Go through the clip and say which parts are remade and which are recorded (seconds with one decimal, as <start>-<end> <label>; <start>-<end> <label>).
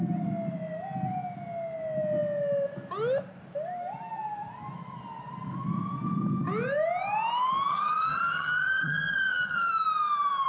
0.0-7.7 recorded; 7.7-9.7 remade; 9.7-10.5 recorded